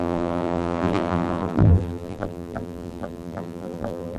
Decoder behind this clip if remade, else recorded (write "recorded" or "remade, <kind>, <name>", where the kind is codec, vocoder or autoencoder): remade, vocoder, BigVGAN v2